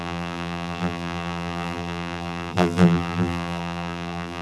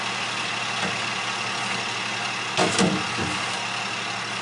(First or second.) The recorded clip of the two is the second